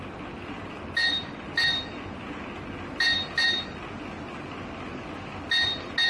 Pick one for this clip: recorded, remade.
recorded